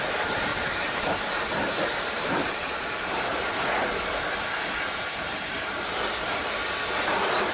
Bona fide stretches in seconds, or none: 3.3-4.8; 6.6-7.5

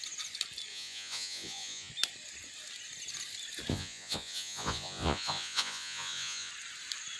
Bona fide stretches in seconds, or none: 0.0-0.7; 1.9-3.7; 6.5-7.2

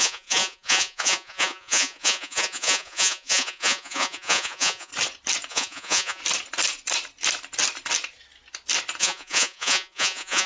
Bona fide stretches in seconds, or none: 4.9-5.5; 6.2-9.0

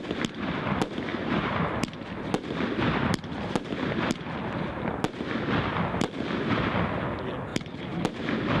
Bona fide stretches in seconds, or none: 0.0-8.6